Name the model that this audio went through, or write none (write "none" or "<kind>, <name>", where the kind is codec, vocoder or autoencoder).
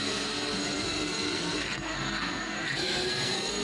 codec, SNAC